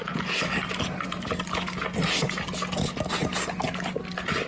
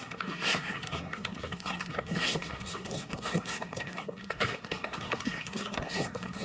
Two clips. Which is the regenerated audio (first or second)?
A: second